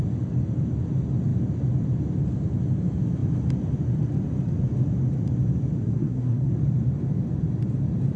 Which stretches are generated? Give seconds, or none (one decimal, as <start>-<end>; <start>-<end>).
5.8-6.5